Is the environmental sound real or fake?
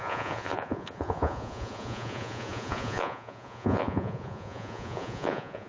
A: fake